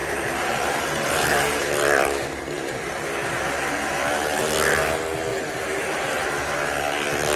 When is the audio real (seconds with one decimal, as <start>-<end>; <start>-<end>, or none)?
4.4-5.3; 6.3-7.4